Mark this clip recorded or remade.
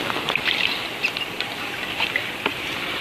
recorded